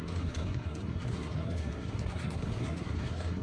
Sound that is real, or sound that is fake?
fake